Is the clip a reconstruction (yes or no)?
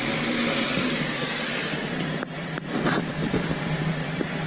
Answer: no